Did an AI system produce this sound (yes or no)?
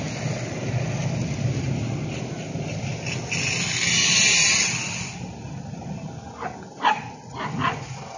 no